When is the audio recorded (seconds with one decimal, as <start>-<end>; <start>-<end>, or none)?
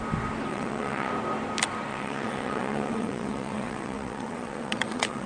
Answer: 0.0-0.5; 1.1-1.9